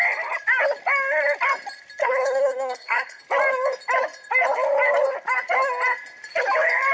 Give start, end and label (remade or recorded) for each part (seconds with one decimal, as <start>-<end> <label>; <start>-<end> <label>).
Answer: 0.0-2.0 recorded; 2.0-3.2 remade; 3.2-6.9 recorded